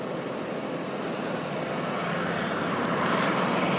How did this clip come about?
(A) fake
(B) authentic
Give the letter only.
B